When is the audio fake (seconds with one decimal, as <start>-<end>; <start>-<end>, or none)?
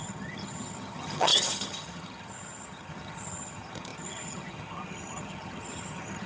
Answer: 0.0-6.3